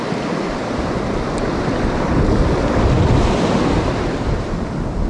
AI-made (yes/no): no